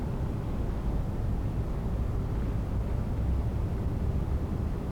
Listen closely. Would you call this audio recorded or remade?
recorded